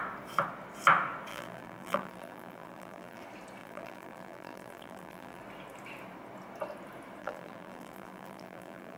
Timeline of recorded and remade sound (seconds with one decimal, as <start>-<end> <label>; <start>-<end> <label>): 0.0-1.3 recorded; 1.3-3.2 remade; 3.2-3.6 recorded; 3.6-5.4 remade; 5.4-7.2 recorded; 7.2-9.0 remade